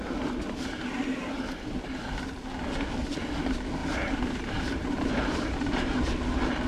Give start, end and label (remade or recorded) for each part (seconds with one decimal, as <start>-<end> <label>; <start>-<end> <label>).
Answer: 0.0-3.8 recorded; 3.8-6.1 remade; 6.1-6.7 recorded